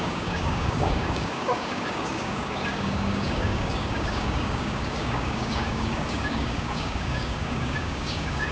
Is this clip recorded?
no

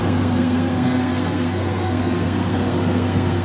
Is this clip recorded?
no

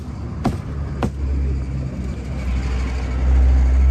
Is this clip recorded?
yes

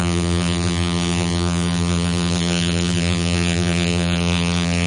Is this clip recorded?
no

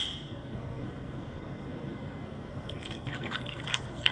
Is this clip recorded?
no